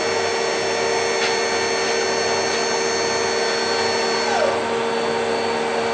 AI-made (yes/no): no